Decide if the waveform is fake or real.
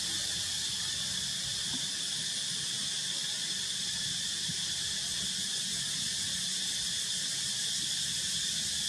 real